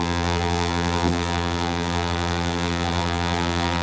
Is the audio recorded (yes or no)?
no